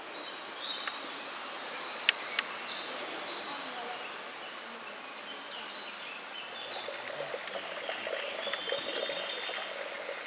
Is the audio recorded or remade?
recorded